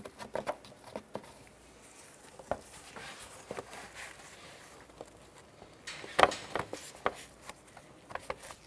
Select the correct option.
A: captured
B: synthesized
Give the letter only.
A